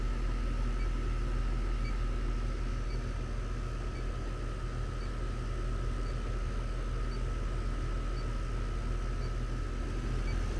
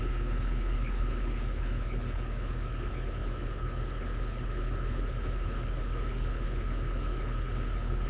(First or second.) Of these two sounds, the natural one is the first